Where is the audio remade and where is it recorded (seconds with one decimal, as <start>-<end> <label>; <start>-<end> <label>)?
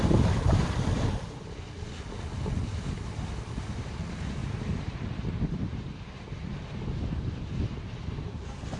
0.0-4.4 recorded; 4.4-8.8 remade